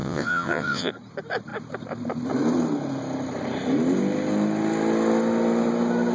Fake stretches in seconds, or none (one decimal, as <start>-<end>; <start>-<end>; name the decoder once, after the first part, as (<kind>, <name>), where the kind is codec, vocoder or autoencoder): 0.0-0.9 (vocoder, WaveNeXt)